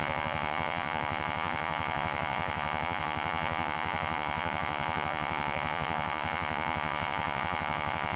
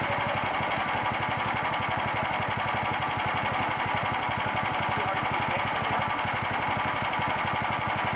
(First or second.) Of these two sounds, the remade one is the first